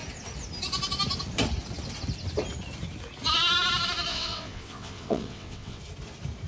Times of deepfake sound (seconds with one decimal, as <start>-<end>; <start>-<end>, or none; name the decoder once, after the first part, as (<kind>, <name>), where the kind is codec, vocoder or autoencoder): 4.1-5.8 (vocoder, WaveNeXt)